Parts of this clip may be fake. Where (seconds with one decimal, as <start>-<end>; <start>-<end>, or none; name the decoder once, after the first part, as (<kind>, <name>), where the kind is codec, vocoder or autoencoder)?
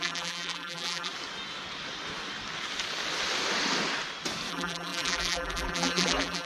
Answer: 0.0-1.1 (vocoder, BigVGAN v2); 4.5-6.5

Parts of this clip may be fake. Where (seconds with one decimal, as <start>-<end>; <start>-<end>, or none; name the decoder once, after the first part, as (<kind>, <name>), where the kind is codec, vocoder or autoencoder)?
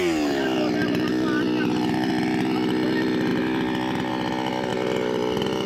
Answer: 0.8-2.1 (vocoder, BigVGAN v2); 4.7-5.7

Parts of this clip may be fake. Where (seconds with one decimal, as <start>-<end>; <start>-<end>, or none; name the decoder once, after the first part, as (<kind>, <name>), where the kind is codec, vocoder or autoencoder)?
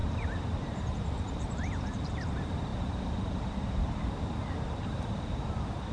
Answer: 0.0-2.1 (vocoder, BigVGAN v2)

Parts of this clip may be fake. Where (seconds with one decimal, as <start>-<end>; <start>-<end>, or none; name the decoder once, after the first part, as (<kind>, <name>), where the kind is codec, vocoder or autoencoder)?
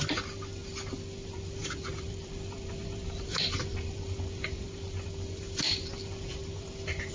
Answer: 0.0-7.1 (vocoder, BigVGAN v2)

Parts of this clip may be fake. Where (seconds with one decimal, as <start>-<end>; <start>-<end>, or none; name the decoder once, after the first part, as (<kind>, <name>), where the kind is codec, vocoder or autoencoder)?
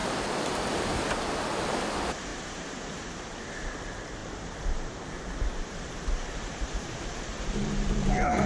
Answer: 0.0-1.0 (vocoder, BigVGAN v2); 2.3-3.1; 4.2-8.5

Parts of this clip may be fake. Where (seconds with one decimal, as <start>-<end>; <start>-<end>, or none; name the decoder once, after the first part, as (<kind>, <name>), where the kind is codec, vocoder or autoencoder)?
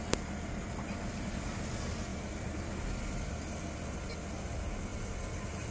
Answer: 2.1-3.7 (vocoder, BigVGAN v2)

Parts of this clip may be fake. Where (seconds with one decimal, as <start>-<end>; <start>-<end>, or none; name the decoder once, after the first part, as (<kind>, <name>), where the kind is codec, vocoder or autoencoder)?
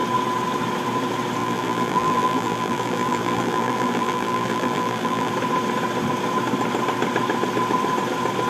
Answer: 1.4-5.3 (vocoder, BigVGAN v2)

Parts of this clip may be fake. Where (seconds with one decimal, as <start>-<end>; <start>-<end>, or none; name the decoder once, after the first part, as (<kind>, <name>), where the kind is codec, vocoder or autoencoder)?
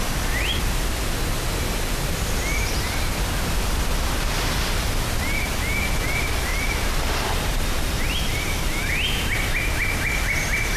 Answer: 6.5-8.9 (vocoder, BigVGAN v2)